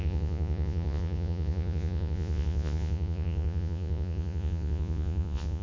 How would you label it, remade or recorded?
remade